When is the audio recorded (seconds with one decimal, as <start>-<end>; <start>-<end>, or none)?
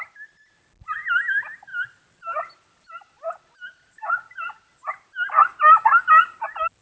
0.0-6.8